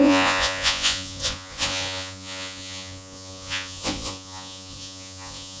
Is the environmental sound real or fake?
fake